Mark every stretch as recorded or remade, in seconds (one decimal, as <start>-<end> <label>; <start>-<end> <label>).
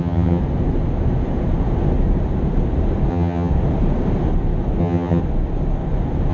0.0-0.4 remade; 0.4-3.1 recorded; 3.1-3.5 remade; 3.5-4.8 recorded; 4.8-5.2 remade; 5.2-6.3 recorded